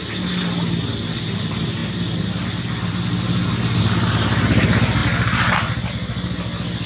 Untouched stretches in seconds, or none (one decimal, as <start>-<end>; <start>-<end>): 0.0-6.9